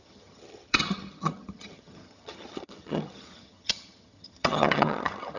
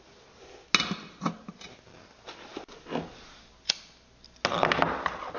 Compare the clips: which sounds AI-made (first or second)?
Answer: first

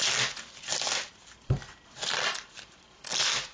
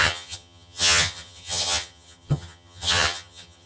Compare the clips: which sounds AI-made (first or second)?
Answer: second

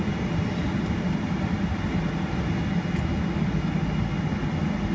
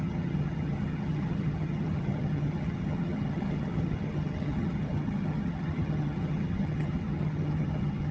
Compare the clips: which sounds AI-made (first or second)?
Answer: second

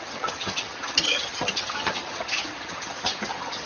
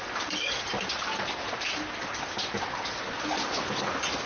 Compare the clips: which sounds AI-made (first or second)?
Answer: first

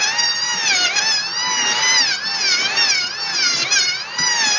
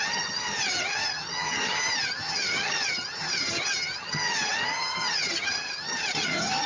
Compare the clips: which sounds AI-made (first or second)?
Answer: second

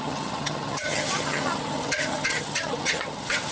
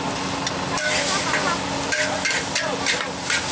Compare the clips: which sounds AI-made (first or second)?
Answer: first